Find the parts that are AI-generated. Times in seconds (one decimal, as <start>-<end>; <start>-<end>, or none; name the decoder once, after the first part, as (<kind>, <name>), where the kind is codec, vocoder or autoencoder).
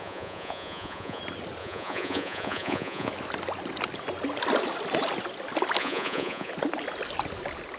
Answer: 0.0-1.2 (vocoder, Vocos); 1.6-3.1; 5.8-6.5